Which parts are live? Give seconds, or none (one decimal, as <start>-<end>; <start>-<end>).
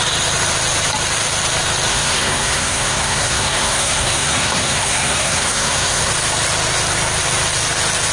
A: 0.0-1.9; 6.1-8.1